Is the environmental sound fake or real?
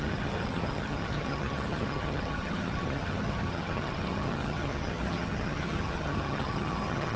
fake